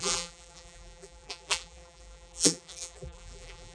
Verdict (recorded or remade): remade